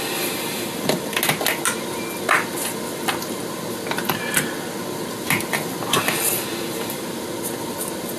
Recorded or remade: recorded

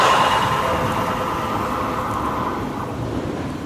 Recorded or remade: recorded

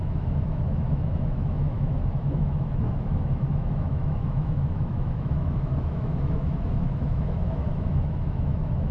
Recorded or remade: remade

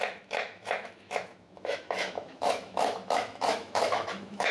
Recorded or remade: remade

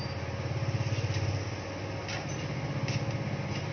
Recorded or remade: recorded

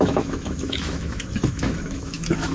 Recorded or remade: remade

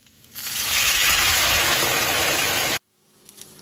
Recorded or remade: remade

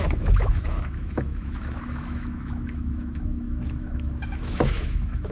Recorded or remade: remade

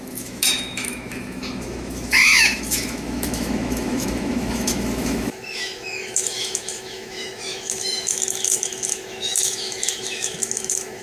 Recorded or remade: remade